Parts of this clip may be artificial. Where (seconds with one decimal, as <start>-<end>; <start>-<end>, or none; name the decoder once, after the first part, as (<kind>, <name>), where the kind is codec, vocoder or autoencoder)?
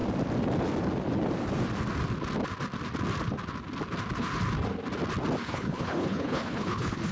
5.4-7.1 (codec, HILCodec)